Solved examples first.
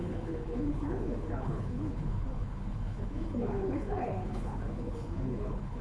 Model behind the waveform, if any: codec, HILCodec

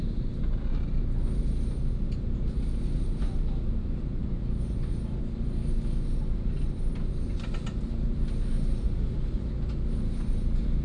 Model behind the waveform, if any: none